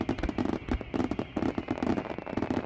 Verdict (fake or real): real